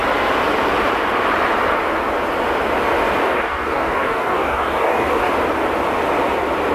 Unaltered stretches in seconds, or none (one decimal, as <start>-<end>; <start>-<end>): 0.0-3.2; 5.3-6.7